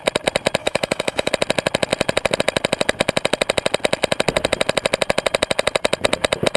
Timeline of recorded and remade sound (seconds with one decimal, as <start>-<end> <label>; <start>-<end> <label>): 0.0-0.6 recorded; 0.6-1.3 remade; 1.3-6.6 recorded